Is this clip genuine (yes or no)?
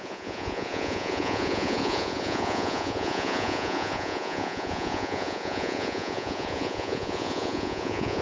no